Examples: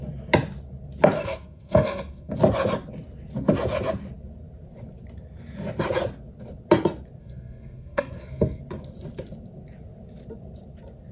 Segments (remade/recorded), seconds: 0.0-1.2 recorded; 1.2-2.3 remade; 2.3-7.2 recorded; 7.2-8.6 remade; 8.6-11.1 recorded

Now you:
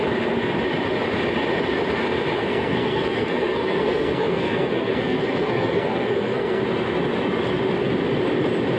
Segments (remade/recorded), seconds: 0.0-2.4 recorded; 2.4-6.6 remade; 6.6-8.8 recorded

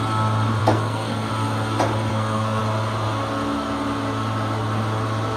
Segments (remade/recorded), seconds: 0.0-0.6 recorded; 0.6-1.3 remade; 1.3-2.1 recorded; 2.1-2.6 remade; 2.6-5.4 recorded

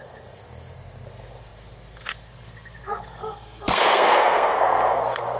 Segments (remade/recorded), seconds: 0.0-5.4 remade

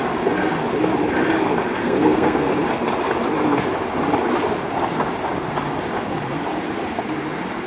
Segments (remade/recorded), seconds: 0.0-1.8 recorded; 1.8-2.5 remade; 2.5-7.7 recorded